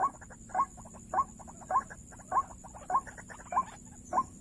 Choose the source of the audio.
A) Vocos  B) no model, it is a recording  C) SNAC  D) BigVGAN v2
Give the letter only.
B